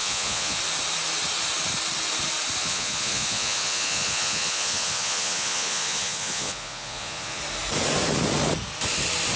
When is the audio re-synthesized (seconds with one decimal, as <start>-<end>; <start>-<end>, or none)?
0.0-0.6; 2.6-7.4

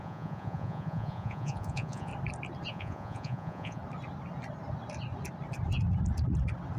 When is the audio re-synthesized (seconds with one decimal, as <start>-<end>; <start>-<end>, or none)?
0.0-2.1; 2.7-3.8

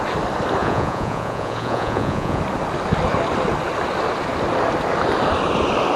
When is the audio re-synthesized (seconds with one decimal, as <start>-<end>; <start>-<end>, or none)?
0.6-2.4

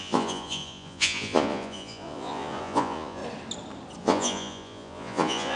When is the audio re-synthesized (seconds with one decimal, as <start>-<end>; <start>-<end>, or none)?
0.0-3.2; 4.0-5.6

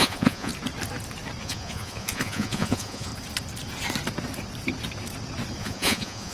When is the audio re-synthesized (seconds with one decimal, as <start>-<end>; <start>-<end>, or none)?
0.0-0.5; 1.4-3.1; 5.6-6.3